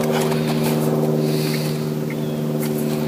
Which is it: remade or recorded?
recorded